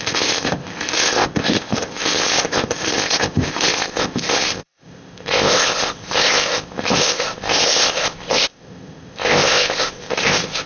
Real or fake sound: fake